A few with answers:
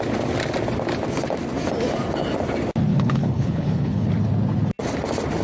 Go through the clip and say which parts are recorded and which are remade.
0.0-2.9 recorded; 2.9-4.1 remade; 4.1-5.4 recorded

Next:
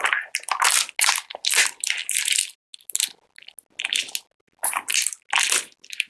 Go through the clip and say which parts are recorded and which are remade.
0.0-6.1 recorded

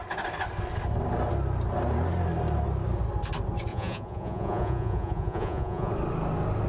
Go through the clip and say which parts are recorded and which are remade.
0.0-3.7 recorded; 3.7-5.9 remade; 5.9-6.7 recorded

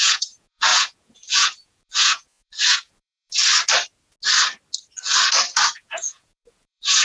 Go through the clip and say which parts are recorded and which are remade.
0.0-3.4 remade; 3.4-5.7 recorded; 5.7-7.0 remade